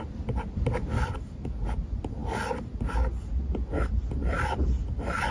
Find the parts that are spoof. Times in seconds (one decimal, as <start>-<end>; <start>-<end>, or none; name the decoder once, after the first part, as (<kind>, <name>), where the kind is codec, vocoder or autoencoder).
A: none